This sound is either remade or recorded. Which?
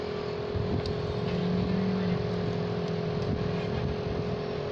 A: recorded